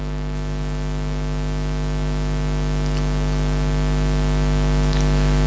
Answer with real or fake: real